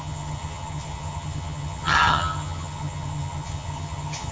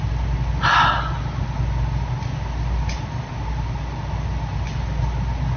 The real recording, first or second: second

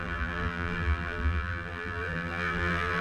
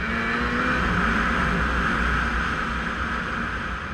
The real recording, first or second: second